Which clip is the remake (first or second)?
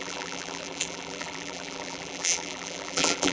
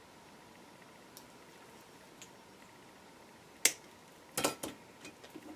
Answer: first